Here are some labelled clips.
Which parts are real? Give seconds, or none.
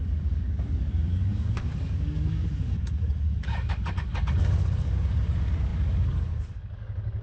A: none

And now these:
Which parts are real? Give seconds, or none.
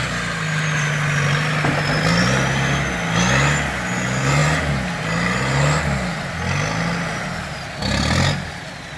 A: 0.0-9.0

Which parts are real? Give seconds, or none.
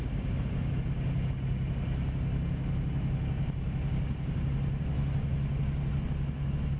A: 0.0-6.8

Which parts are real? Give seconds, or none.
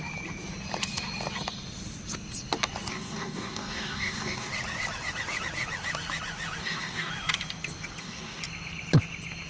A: 0.0-2.9; 4.5-6.6; 7.1-8.0; 8.4-9.5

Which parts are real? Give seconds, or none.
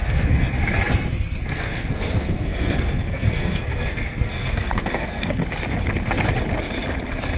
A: 5.4-7.4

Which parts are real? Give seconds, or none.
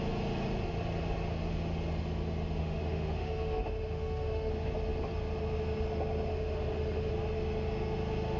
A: 0.0-2.6; 4.5-6.3; 7.1-8.4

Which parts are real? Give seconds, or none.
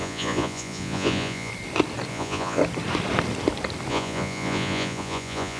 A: 1.5-2.1; 2.6-3.9